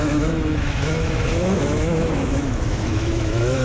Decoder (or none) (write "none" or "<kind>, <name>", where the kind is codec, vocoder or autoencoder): autoencoder, DAC-VAE